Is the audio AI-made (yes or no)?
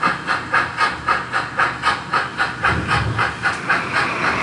no